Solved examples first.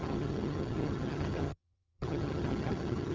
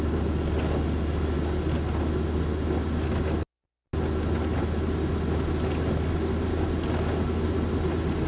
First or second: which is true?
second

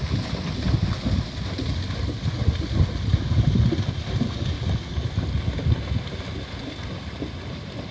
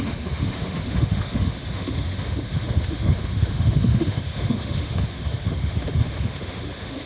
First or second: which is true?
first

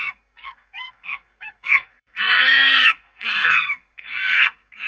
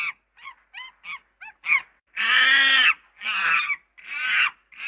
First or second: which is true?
second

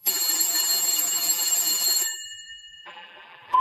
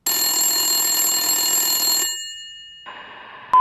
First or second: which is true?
second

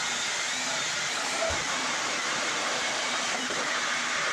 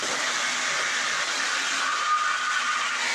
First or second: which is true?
second